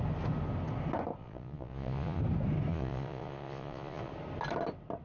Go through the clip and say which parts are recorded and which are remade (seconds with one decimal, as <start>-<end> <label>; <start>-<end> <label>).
0.0-1.2 recorded; 1.2-2.2 remade; 2.2-2.7 recorded; 2.7-4.1 remade; 4.1-5.0 recorded